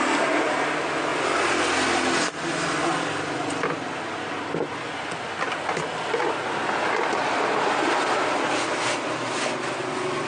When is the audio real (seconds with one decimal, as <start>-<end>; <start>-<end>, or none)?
0.0-10.3